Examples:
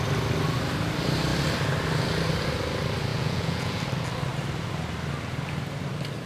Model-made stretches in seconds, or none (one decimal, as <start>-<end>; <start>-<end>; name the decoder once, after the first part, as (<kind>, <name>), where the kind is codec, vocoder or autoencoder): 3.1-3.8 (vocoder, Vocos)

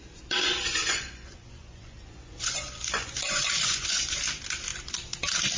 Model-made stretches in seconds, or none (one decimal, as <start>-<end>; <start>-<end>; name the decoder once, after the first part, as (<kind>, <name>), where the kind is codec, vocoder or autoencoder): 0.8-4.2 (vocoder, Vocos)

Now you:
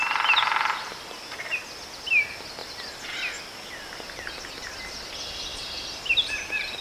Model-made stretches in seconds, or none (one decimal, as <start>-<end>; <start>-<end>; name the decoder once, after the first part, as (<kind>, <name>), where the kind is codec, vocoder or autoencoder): none

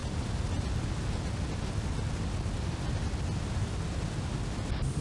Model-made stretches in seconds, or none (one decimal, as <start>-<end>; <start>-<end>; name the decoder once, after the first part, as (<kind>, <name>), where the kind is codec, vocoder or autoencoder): none

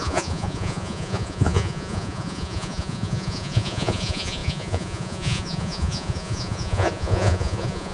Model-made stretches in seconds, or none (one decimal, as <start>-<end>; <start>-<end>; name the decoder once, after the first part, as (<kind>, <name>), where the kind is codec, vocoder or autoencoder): 0.0-7.9 (vocoder, Vocos)